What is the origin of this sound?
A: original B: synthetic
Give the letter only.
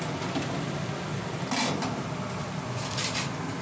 A